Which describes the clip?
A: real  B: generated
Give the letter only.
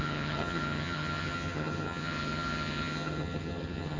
B